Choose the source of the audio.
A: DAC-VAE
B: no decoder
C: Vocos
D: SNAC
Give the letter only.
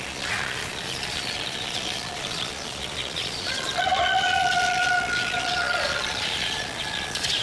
C